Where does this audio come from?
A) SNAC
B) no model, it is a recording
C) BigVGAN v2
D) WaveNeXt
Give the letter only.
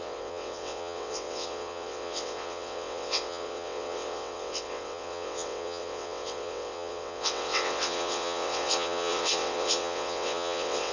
D